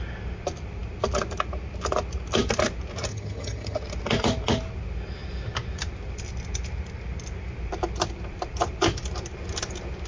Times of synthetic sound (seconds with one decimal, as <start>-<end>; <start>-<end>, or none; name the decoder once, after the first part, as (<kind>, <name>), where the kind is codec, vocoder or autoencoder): 3.1-3.8 (vocoder, HiFi-GAN)